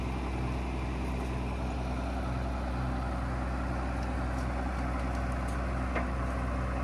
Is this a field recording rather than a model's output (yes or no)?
yes